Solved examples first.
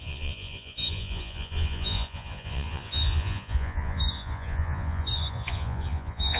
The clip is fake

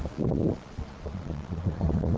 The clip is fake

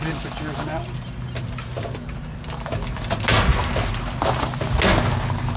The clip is real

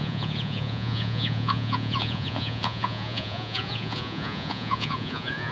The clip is fake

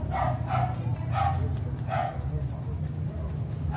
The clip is real